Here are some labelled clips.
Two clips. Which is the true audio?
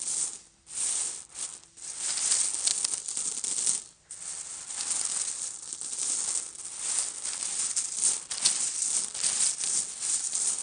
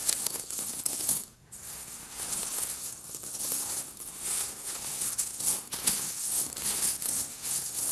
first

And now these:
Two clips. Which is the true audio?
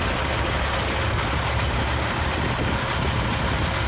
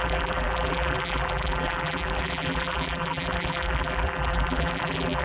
first